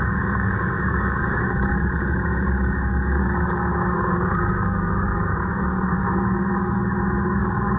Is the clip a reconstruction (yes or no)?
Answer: yes